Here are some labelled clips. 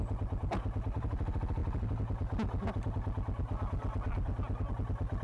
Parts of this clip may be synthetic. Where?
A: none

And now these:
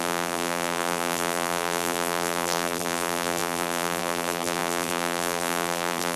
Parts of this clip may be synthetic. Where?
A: 0.0-6.2 (vocoder, BigVGAN v2)

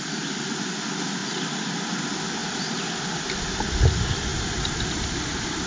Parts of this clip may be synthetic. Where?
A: 2.4-3.3 (vocoder, BigVGAN v2); 4.3-5.7

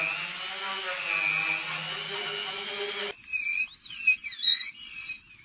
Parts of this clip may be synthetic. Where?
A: none